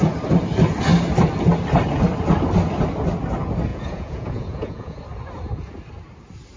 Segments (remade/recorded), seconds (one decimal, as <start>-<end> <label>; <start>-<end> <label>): 0.0-3.7 recorded; 3.7-5.0 remade; 5.0-6.6 recorded